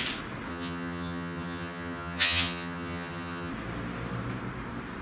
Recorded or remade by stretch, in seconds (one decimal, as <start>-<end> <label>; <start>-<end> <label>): 0.0-0.5 recorded; 0.5-3.5 remade; 3.5-5.0 recorded

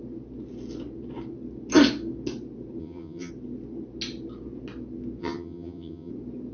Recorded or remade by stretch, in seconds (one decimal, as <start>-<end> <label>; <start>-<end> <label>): 0.0-2.8 recorded; 2.8-3.3 remade; 3.3-5.2 recorded; 5.2-6.1 remade; 6.1-6.5 recorded